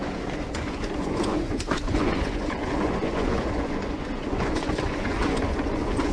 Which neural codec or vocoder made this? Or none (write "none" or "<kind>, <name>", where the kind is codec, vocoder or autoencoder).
vocoder, Vocos